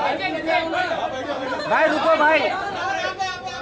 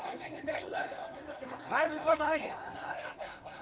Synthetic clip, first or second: second